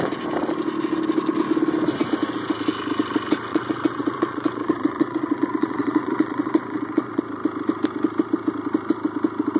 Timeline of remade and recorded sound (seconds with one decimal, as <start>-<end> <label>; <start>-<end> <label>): 0.0-3.5 recorded; 3.5-7.2 remade; 7.2-9.6 recorded